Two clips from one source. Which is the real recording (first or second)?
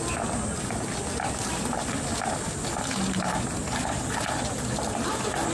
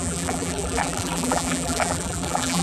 first